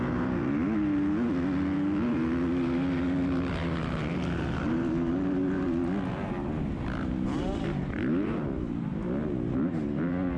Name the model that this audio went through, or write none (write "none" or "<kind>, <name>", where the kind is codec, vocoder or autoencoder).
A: none